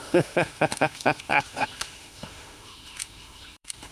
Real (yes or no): no